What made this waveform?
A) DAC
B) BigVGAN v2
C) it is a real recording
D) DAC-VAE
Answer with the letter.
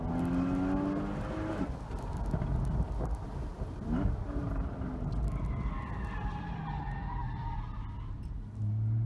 C